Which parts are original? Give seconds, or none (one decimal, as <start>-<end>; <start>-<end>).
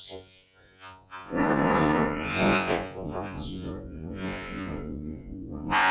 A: none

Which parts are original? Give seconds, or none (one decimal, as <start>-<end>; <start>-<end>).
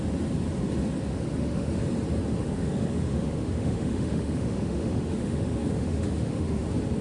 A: 0.0-1.1; 1.8-2.4; 6.6-7.0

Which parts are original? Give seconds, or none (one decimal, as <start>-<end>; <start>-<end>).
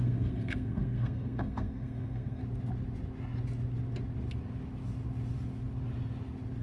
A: 2.4-6.6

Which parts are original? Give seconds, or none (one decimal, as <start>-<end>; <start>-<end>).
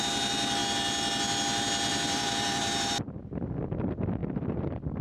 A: 0.0-1.9; 2.9-4.2